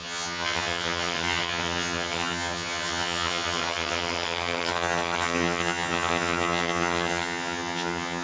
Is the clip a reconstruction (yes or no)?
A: yes